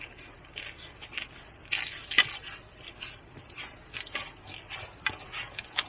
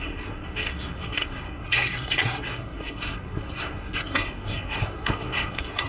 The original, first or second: first